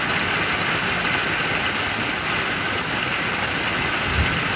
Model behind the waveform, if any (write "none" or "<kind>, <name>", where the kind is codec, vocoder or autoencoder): none